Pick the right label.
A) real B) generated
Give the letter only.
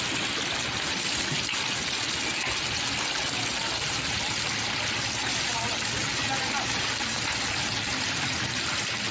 A